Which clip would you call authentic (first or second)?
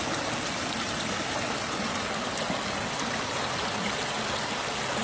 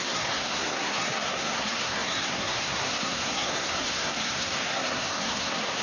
first